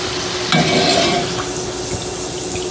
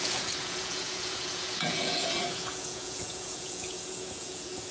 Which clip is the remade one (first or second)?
second